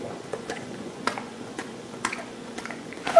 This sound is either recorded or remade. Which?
remade